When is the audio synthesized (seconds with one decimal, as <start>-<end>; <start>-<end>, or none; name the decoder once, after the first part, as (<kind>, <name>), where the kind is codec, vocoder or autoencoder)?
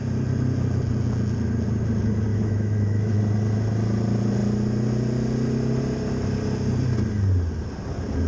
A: 2.3-3.2 (autoencoder, DAC-VAE)